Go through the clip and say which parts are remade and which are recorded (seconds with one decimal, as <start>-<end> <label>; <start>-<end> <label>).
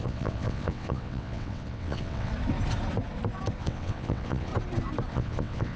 0.0-2.3 remade; 2.3-3.6 recorded; 3.6-4.5 remade; 4.5-5.1 recorded; 5.1-5.8 remade